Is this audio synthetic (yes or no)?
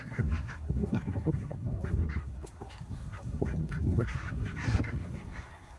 yes